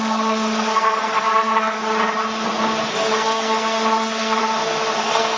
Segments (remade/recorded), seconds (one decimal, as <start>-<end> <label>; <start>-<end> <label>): 0.0-1.8 remade; 1.8-2.9 recorded; 2.9-4.4 remade; 4.4-5.0 recorded; 5.0-5.4 remade